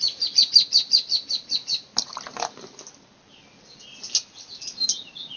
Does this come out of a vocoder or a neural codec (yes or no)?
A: no